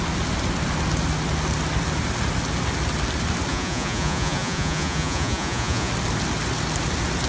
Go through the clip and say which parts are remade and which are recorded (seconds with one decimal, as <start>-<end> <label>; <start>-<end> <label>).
0.0-3.5 recorded; 3.5-5.9 remade; 5.9-7.3 recorded